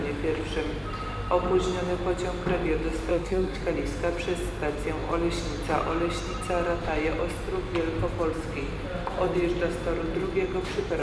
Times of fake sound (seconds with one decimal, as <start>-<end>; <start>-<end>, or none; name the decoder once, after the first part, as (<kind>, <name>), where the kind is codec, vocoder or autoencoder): 3.1-3.6 (codec, SNAC)